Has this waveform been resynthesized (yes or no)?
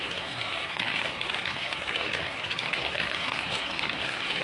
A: yes